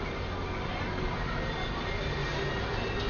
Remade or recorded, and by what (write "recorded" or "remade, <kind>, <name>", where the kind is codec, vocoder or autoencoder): recorded